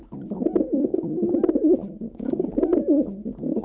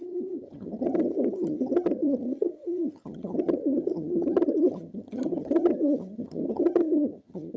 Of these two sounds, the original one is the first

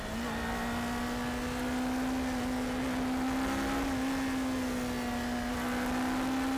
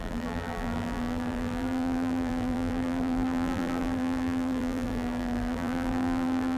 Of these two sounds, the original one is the first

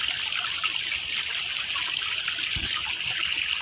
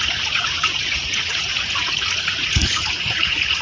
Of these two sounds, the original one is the first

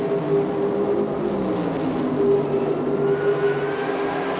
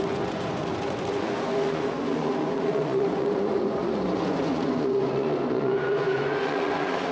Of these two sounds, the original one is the first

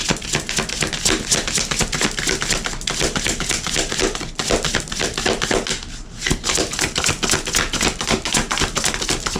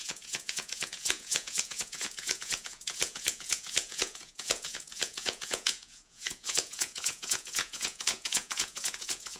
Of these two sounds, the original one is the first